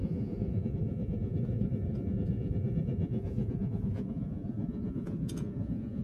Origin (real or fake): fake